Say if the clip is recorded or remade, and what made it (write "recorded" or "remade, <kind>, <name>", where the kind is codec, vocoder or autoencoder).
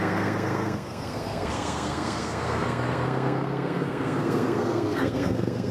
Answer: remade, codec, SNAC